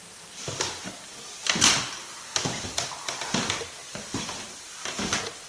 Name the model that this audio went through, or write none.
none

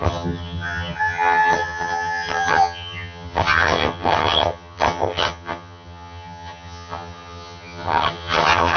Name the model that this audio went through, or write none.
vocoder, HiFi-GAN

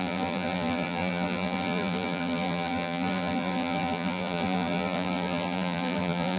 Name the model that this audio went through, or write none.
vocoder, BigVGAN v2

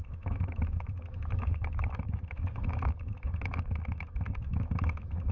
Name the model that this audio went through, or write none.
autoencoder, DAC-VAE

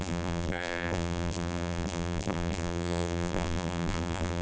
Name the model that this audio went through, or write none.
vocoder, BigVGAN v2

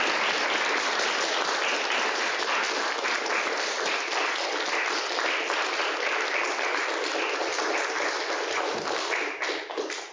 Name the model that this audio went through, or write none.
none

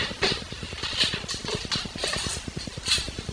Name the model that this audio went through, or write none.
none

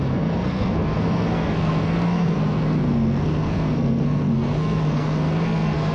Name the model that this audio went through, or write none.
codec, SNAC